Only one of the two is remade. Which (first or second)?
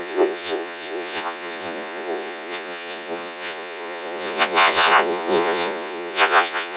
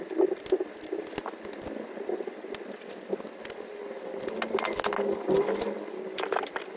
first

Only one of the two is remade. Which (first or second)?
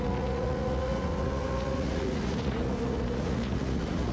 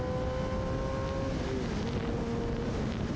first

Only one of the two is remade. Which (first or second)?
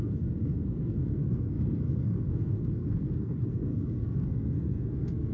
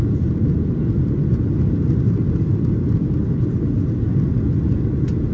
first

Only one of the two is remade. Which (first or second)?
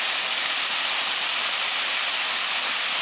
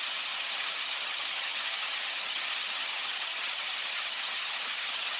second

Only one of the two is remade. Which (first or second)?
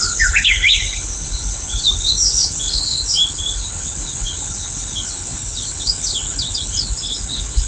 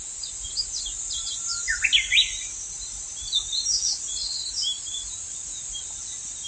first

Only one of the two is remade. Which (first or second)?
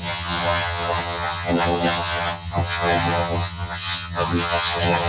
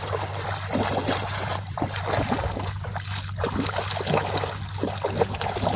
first